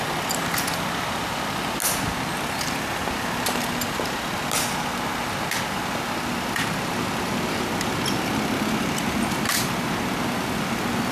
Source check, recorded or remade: recorded